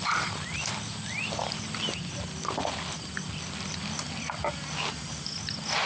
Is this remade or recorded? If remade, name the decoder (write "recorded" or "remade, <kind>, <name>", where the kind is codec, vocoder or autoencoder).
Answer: recorded